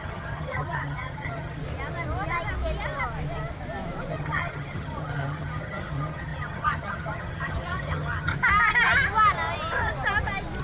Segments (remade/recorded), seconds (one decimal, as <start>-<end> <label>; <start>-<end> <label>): 0.0-1.6 remade; 1.6-4.1 recorded; 4.1-8.3 remade; 8.3-10.6 recorded